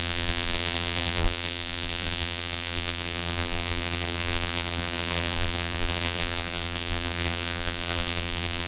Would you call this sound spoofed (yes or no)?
yes